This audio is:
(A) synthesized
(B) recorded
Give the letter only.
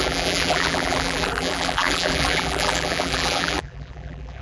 A